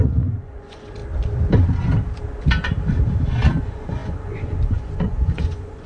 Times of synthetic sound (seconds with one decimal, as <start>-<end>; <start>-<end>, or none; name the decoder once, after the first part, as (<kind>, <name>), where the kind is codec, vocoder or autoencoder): 0.0-1.0 (vocoder, Vocos); 3.6-5.9